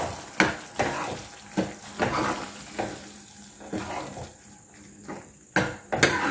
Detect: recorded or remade recorded